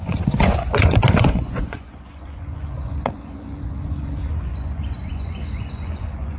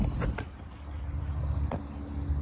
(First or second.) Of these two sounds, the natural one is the second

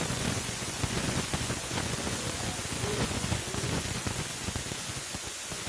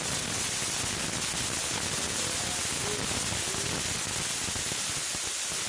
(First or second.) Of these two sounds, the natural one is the second